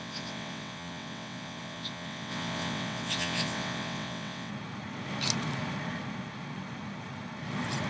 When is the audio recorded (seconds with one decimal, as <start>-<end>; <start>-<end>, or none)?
4.5-7.9